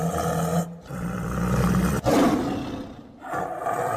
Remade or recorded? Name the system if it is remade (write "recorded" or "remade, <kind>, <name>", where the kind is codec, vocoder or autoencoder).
recorded